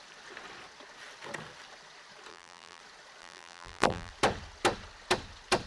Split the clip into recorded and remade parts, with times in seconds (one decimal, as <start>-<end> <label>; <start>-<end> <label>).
0.0-2.3 recorded; 2.3-2.8 remade; 2.8-3.2 recorded; 3.2-4.1 remade; 4.1-5.7 recorded